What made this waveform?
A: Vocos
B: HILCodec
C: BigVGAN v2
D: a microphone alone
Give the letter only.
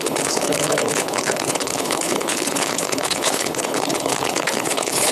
B